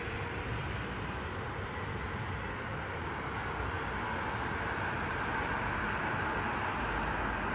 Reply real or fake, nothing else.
real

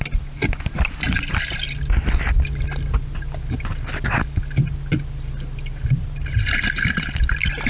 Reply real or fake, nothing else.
real